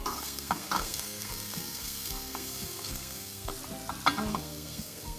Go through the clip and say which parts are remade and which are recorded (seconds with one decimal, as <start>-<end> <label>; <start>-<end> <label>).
0.0-3.5 remade; 3.5-4.3 recorded; 4.3-5.2 remade